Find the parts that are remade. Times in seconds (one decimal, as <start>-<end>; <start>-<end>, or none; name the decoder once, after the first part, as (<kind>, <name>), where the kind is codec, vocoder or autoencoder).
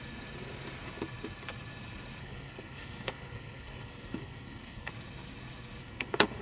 2.2-4.9 (codec, SNAC); 5.8-6.4